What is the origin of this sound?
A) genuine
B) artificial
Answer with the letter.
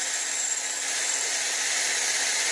A